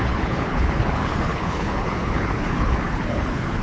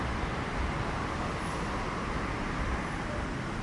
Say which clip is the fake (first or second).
first